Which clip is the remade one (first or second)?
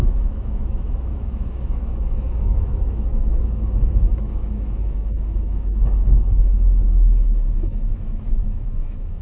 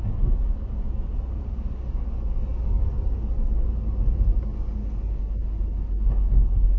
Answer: first